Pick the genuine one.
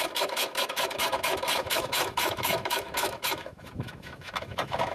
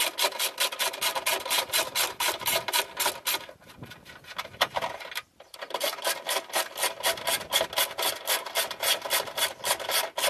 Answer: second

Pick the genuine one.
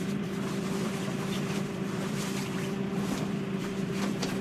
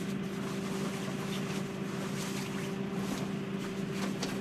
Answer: second